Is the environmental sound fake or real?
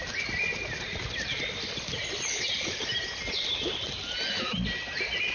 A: real